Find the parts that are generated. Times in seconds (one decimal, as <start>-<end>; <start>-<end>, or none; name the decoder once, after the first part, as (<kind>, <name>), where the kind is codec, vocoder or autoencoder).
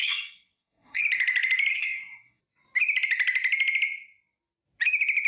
0.0-1.0 (codec, SNAC); 1.7-2.4